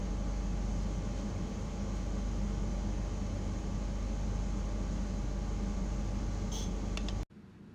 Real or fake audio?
real